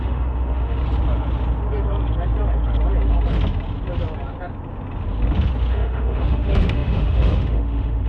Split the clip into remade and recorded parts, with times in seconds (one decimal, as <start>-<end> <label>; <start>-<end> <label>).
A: 0.0-0.8 remade; 0.8-5.7 recorded; 5.7-8.1 remade